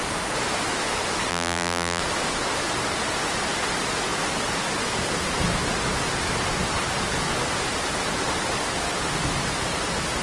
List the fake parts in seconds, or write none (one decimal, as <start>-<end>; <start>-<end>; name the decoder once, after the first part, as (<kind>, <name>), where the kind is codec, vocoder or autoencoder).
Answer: 1.3-2.0 (vocoder, BigVGAN v2)